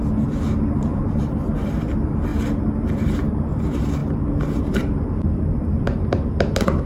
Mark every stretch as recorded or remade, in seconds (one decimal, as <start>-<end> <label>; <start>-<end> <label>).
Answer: 0.0-2.3 remade; 2.3-3.1 recorded; 3.1-4.0 remade; 4.0-4.6 recorded; 4.6-6.9 remade